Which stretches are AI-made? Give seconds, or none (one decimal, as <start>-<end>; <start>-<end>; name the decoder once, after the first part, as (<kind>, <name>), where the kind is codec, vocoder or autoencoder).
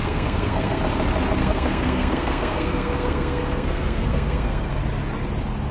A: 0.0-0.8 (codec, SNAC); 1.4-4.8